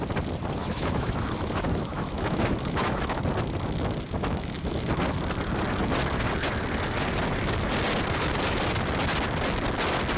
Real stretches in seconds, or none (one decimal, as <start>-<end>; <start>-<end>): 0.0-0.6; 3.2-4.2; 4.9-10.2